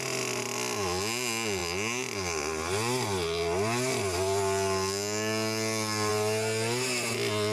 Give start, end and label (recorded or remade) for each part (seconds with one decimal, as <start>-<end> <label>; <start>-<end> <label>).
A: 0.0-7.5 recorded

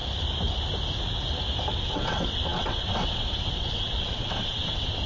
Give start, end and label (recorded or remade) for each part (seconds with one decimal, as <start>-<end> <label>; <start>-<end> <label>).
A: 0.0-1.7 recorded; 1.7-5.1 remade

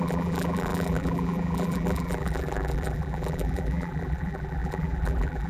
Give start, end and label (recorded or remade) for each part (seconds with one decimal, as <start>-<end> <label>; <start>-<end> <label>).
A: 0.0-5.5 remade

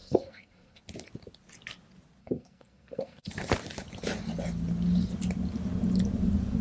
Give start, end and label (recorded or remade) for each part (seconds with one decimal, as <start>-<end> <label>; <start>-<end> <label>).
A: 0.0-0.8 remade; 0.8-2.2 recorded; 2.2-3.3 remade; 3.3-6.6 recorded

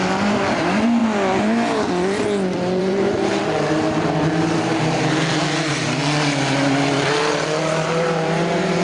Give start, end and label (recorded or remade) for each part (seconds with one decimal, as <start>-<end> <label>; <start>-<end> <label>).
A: 0.0-1.0 remade; 1.0-2.8 recorded; 2.8-6.0 remade; 6.0-7.3 recorded; 7.3-8.8 remade

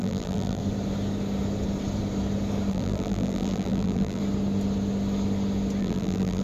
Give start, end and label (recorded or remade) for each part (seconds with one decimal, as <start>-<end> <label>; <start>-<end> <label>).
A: 0.0-0.6 remade; 0.6-2.7 recorded; 2.7-4.2 remade; 4.2-5.8 recorded; 5.8-6.4 remade

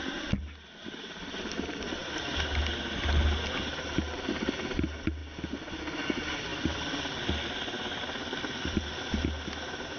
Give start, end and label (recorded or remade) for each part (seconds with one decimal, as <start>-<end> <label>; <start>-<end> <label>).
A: 0.0-6.5 recorded; 6.5-8.8 remade; 8.8-10.0 recorded

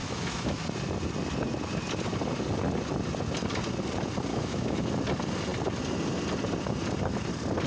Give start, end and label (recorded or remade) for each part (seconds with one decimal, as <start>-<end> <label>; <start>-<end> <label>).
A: 0.0-0.6 remade; 0.6-4.3 recorded; 4.3-4.9 remade; 4.9-7.7 recorded